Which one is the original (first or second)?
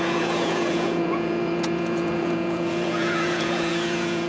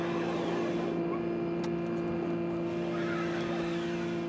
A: second